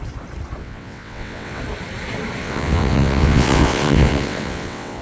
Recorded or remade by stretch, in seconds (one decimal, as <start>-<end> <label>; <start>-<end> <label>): 0.0-0.6 recorded; 0.6-1.6 remade; 1.6-2.4 recorded; 2.4-5.0 remade